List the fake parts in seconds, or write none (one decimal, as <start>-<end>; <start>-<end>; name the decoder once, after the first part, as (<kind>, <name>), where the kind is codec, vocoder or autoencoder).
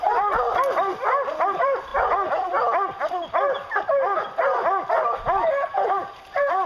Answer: 0.0-0.9 (vocoder, BigVGAN v2); 1.4-1.9; 5.9-6.7